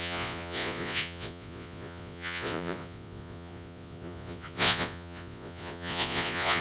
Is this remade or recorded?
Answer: remade